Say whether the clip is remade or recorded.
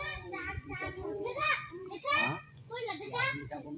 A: remade